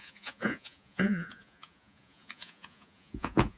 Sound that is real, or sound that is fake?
fake